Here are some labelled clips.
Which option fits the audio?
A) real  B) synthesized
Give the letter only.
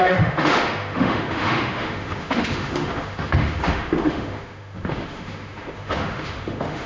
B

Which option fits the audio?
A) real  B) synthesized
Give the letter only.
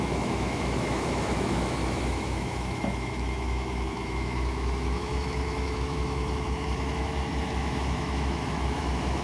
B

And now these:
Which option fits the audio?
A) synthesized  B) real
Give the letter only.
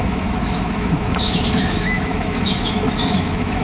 A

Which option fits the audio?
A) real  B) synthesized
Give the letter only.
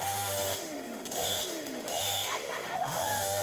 B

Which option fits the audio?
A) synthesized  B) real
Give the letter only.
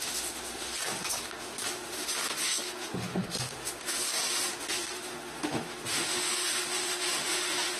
A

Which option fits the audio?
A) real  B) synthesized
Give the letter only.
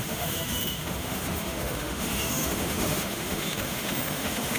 B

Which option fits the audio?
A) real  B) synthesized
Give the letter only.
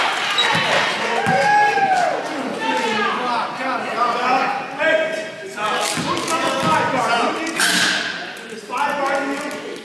A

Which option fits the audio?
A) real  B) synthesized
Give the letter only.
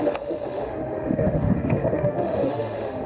B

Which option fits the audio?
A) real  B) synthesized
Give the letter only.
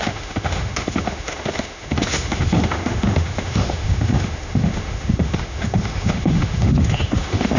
B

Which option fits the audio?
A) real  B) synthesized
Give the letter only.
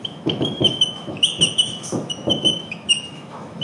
B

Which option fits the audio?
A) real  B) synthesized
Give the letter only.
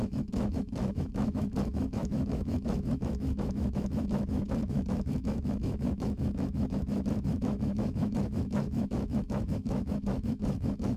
B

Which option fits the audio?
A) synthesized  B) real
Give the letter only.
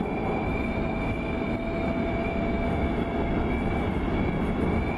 B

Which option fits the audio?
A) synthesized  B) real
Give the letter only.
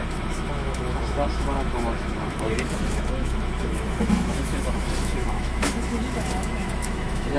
A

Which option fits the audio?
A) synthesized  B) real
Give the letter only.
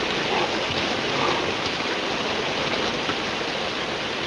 B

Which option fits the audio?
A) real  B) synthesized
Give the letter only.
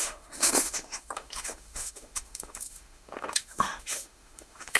B